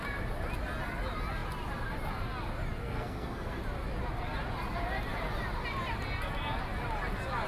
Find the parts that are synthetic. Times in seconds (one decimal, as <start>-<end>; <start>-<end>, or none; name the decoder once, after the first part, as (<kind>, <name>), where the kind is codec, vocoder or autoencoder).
2.8-3.6 (codec, SNAC)